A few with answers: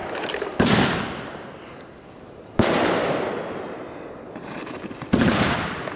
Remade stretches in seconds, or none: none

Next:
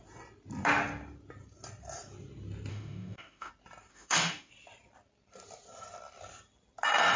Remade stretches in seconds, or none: 2.7-3.5 (autoencoder, DAC-VAE); 3.9-4.5

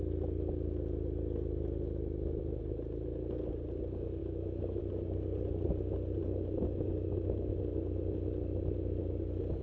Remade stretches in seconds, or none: 4.2-4.8 (autoencoder, DAC-VAE)

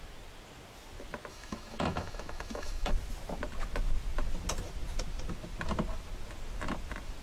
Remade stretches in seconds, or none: 1.3-2.9 (autoencoder, DAC-VAE)